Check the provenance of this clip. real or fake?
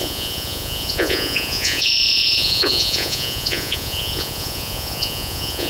fake